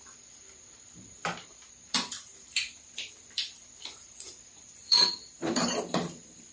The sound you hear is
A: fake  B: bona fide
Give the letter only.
A